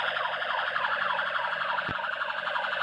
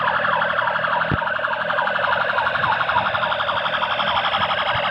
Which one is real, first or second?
second